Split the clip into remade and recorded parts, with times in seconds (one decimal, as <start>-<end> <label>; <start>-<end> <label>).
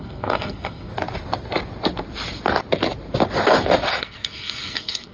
0.0-0.9 remade; 0.9-4.0 recorded; 4.0-5.1 remade